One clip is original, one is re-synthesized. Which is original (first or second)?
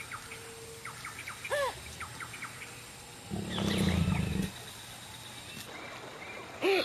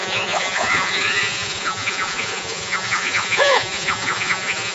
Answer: first